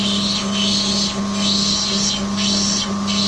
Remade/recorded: recorded